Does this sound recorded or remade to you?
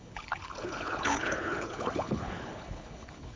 remade